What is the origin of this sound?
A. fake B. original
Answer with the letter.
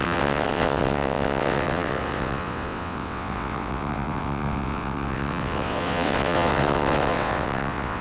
A